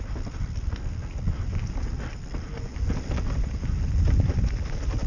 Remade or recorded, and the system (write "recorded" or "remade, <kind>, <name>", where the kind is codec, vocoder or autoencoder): recorded